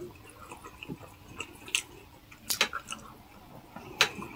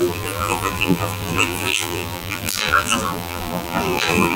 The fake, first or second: second